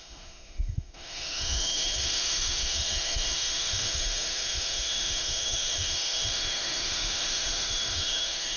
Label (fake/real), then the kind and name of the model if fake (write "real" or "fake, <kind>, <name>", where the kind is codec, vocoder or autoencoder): fake, autoencoder, DAC-VAE